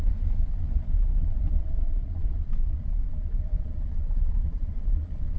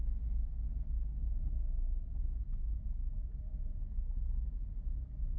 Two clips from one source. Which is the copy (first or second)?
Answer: first